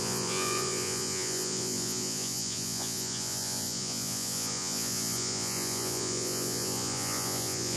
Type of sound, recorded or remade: remade